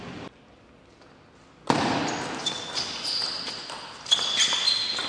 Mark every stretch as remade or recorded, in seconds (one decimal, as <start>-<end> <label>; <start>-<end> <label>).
0.0-5.1 recorded